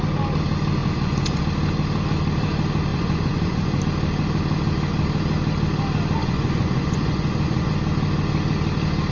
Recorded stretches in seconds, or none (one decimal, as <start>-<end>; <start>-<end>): 0.0-0.8; 1.4-2.9; 3.8-6.2; 7.7-9.1